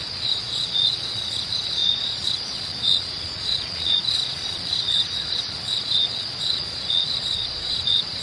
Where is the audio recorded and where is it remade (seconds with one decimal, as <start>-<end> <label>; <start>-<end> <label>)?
0.0-8.2 remade